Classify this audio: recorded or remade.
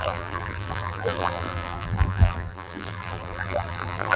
remade